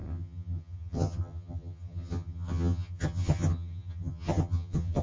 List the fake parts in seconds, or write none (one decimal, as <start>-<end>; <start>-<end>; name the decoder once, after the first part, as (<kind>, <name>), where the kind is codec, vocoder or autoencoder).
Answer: 0.0-5.0 (vocoder, HiFi-GAN)